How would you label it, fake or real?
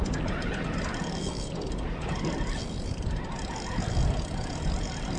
real